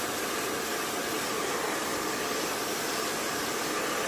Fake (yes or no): no